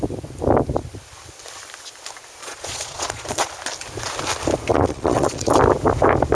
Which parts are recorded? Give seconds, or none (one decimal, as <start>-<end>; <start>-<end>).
0.0-2.4; 3.5-4.7; 5.5-6.3